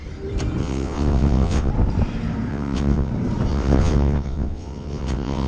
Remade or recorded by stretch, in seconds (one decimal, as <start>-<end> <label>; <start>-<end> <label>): 0.0-0.6 recorded; 0.6-1.7 remade; 1.7-2.5 recorded; 2.5-3.1 remade; 3.1-3.5 recorded; 3.5-5.5 remade